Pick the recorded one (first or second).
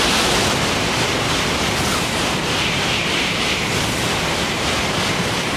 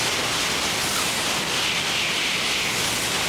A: second